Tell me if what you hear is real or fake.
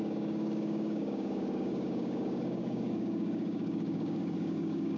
fake